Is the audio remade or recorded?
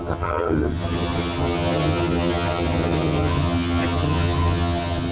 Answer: remade